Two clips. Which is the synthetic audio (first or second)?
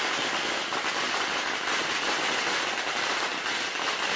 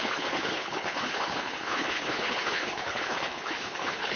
second